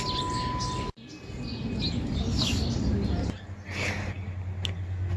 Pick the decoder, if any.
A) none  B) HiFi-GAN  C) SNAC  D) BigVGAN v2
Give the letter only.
A